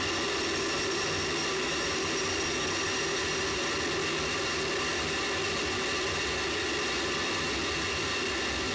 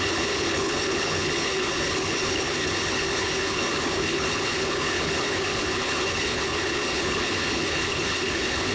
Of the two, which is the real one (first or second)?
first